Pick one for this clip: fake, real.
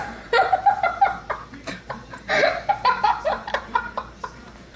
fake